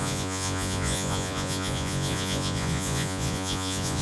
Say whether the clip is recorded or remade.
remade